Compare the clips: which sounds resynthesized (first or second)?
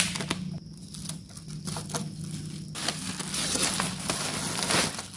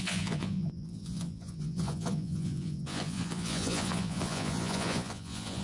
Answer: second